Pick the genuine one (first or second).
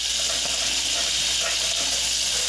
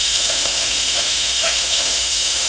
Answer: first